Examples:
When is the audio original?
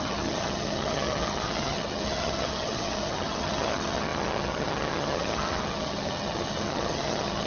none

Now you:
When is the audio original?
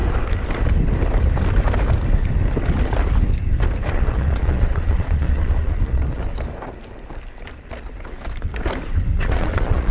0.0-3.9; 6.3-9.2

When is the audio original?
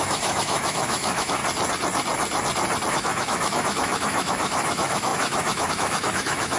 1.4-2.9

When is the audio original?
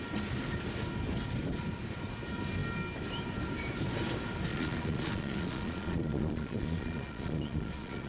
0.0-4.5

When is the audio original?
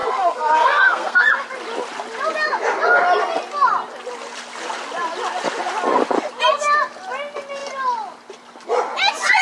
1.2-9.4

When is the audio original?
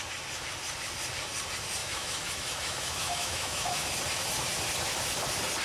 0.0-1.8; 3.9-5.6